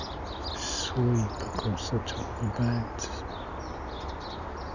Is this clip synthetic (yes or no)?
no